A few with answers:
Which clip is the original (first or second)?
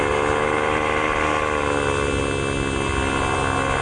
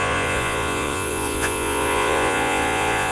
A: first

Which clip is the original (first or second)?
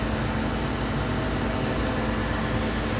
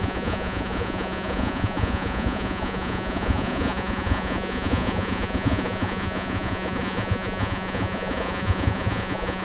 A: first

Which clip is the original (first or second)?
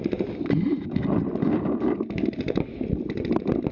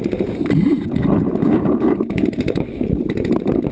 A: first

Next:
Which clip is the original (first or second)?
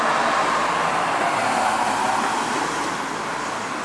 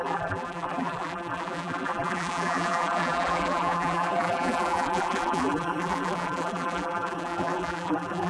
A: first